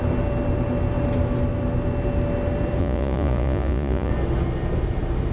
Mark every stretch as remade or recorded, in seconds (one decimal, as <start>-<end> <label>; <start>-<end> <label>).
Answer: 0.0-2.8 recorded; 2.8-4.1 remade; 4.1-5.3 recorded